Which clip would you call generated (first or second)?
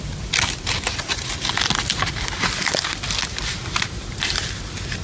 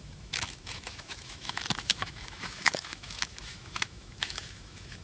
second